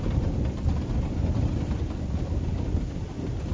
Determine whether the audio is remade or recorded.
recorded